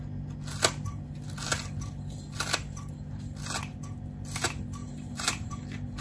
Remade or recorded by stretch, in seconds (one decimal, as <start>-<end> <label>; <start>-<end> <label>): 0.0-4.8 recorded; 4.8-5.5 remade; 5.5-6.0 recorded